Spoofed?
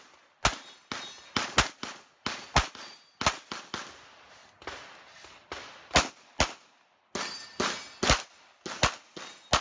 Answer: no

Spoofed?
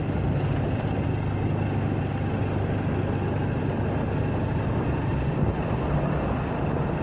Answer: no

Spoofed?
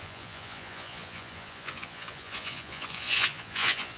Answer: yes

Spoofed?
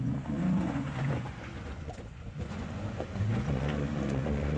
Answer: yes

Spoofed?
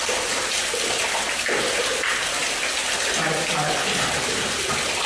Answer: yes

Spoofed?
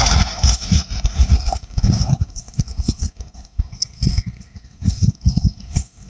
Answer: yes